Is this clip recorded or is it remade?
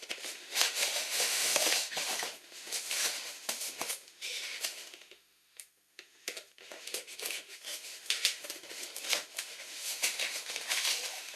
remade